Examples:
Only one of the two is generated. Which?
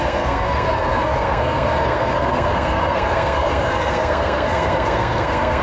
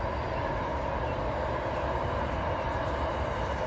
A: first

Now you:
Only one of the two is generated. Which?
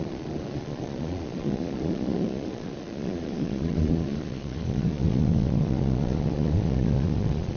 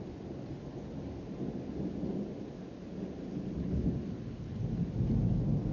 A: first